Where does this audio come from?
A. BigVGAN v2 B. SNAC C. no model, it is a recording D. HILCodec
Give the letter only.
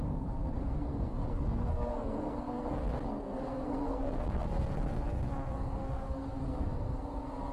B